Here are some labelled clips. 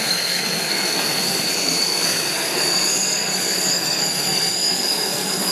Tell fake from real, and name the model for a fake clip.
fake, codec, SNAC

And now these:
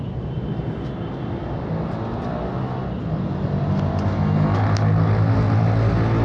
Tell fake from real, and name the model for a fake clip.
real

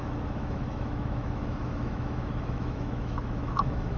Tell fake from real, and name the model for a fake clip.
fake, autoencoder, DAC-VAE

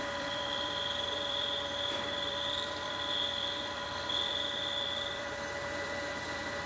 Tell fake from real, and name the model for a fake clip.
fake, vocoder, BigVGAN v2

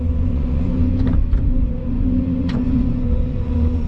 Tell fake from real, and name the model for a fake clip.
fake, vocoder, Vocos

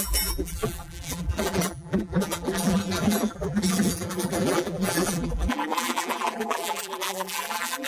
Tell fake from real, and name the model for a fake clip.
fake, vocoder, BigVGAN v2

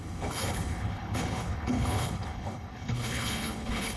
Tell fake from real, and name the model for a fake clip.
fake, codec, HILCodec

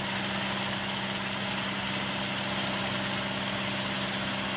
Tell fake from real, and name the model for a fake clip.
real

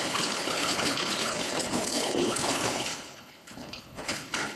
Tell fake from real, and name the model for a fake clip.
fake, codec, HILCodec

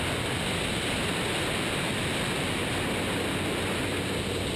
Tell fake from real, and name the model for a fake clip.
real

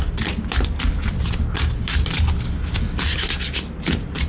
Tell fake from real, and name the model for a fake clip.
real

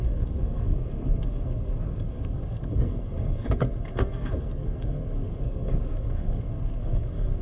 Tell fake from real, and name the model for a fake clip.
fake, codec, SNAC